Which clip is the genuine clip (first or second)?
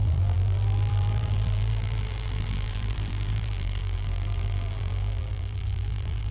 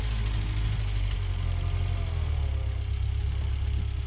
second